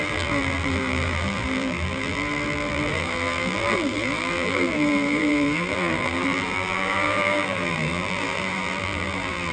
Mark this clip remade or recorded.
remade